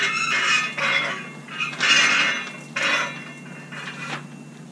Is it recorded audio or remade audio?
recorded